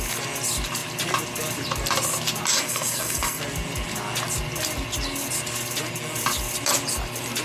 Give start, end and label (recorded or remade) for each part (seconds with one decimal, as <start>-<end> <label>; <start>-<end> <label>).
0.0-2.5 recorded; 2.5-3.4 remade; 3.4-7.4 recorded